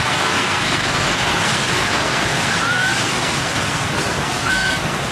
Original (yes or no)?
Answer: no